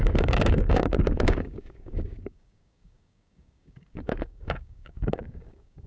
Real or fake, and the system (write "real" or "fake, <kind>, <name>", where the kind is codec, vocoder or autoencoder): fake, codec, DAC